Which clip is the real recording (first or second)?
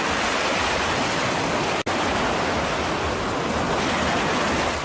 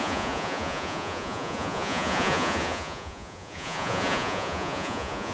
first